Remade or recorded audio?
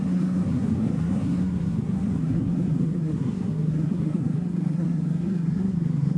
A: remade